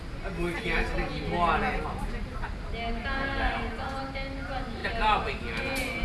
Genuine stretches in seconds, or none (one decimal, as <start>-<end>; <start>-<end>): 0.0-6.0